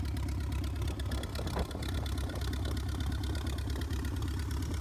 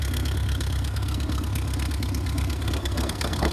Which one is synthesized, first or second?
second